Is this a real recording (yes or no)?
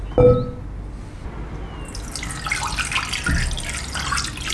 yes